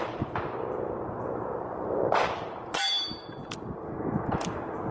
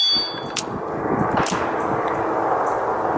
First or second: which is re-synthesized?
first